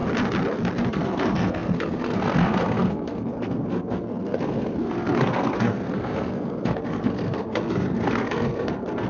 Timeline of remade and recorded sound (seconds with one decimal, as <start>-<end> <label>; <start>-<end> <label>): 0.0-0.9 recorded; 0.9-9.1 remade